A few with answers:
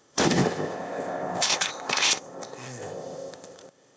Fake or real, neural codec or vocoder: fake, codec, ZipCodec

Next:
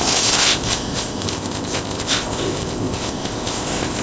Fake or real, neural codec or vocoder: fake, codec, ZipCodec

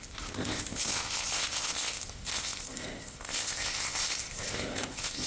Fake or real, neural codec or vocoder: fake, codec, ZipCodec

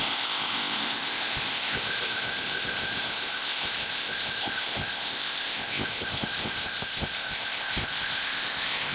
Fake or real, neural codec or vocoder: fake, codec, ZipCodec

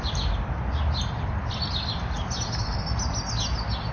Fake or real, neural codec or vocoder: real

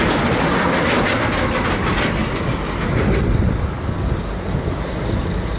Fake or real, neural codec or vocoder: real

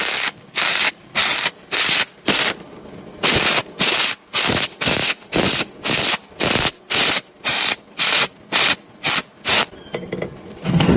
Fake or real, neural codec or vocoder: real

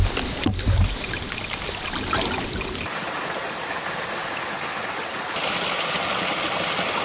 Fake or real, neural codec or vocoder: real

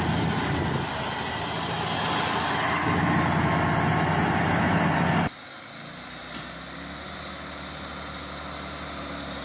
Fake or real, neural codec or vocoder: real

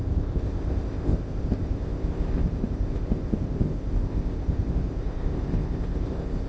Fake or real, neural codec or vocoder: fake, codec, ZipCodec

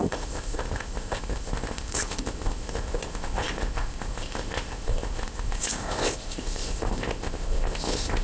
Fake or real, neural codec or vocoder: fake, codec, ZipCodec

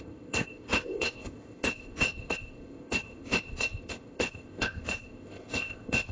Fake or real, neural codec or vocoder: fake, codec, ZipCodec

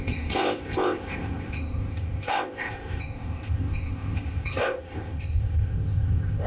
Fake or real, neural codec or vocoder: fake, codec, ZipCodec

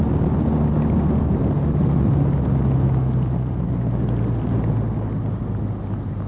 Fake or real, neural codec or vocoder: real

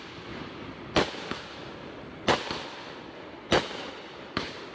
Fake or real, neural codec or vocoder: real